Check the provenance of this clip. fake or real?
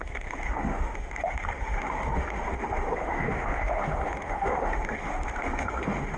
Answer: fake